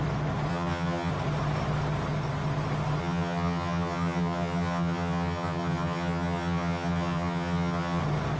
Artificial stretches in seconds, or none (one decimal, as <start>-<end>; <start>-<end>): 0.5-1.1; 3.0-8.0